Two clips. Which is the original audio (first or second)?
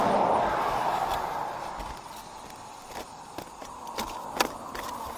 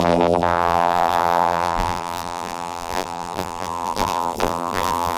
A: first